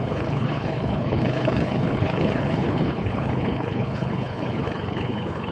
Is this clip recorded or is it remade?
remade